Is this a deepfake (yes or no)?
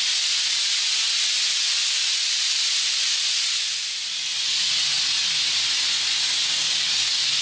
no